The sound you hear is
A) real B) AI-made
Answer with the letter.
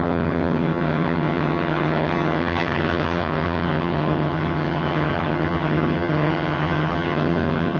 B